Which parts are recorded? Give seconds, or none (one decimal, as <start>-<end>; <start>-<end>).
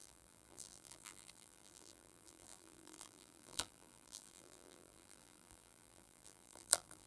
none